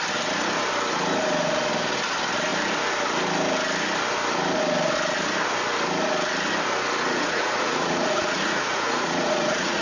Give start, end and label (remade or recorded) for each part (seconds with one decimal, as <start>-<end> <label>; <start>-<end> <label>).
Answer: 0.0-7.1 recorded; 7.1-9.8 remade